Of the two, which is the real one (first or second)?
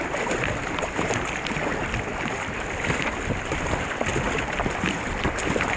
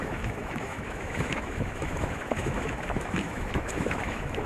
first